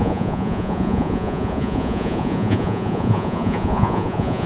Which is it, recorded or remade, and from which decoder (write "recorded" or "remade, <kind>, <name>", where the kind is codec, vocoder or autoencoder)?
remade, vocoder, Vocos